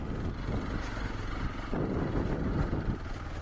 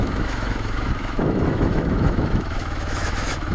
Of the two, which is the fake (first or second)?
second